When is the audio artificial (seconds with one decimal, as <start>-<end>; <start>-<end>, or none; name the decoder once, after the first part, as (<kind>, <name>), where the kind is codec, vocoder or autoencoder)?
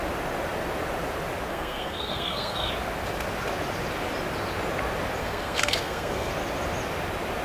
1.5-2.7 (codec, SNAC); 5.2-6.3